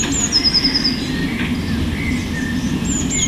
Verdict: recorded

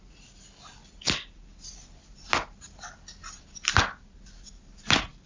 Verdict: recorded